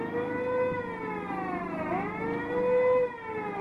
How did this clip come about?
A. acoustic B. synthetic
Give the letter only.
A